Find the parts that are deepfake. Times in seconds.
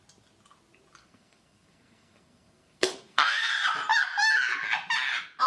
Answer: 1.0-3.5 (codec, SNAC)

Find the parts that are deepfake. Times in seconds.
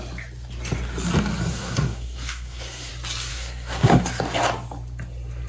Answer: 1.5-2.9 (codec, SNAC); 3.3-4.0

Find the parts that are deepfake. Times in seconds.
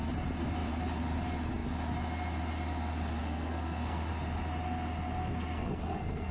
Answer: 3.2-4.1 (codec, SNAC); 5.2-6.3